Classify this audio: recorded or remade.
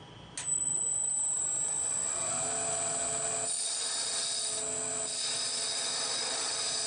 recorded